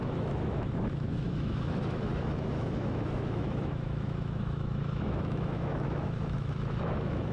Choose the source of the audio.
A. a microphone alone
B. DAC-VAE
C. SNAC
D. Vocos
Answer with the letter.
B